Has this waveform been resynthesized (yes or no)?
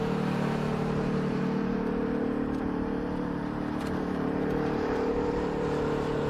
yes